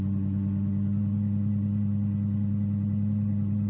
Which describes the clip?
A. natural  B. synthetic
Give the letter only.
A